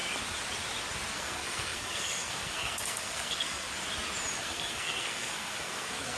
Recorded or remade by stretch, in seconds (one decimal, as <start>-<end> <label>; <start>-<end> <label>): 0.0-1.1 recorded; 1.1-3.7 remade; 3.7-4.4 recorded; 4.4-6.2 remade